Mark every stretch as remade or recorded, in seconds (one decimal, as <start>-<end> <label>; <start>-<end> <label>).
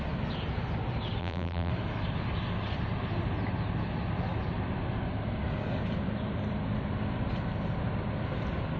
0.0-1.2 recorded; 1.2-1.7 remade; 1.7-8.8 recorded